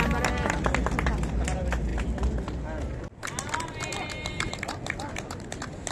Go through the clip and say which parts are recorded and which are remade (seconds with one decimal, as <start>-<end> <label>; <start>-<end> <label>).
0.0-5.9 recorded